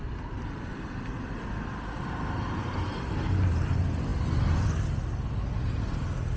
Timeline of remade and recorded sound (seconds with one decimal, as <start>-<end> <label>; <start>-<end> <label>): 0.0-6.4 recorded